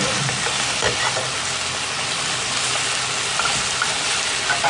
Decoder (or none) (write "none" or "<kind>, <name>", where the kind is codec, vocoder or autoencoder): none